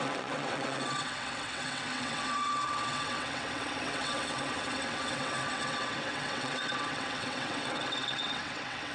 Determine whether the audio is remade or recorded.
remade